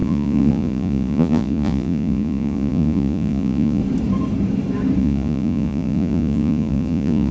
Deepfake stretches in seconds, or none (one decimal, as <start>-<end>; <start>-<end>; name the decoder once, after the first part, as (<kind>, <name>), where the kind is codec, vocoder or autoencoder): 0.0-3.8 (vocoder, Vocos); 5.0-7.3